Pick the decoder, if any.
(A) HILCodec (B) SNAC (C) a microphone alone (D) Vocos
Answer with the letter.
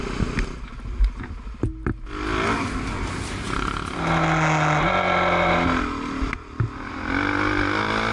C